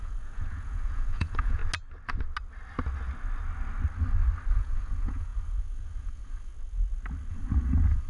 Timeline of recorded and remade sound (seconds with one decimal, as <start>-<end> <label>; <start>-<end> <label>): 0.0-1.6 remade; 1.6-4.5 recorded; 4.5-6.5 remade; 6.5-7.3 recorded; 7.3-8.1 remade